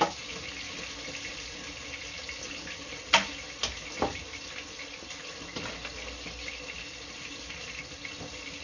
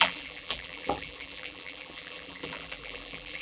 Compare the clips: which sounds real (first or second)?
first